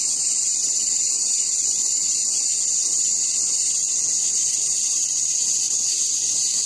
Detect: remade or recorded recorded